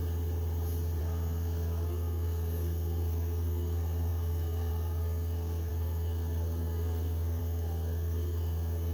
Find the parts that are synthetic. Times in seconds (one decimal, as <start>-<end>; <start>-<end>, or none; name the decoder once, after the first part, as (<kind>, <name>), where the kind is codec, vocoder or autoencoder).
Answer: 1.0-8.9 (codec, SNAC)